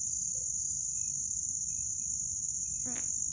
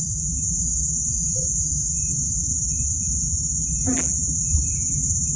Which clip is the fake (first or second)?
second